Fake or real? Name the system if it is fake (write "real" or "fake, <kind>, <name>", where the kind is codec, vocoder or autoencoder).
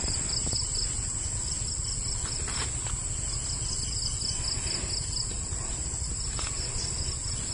real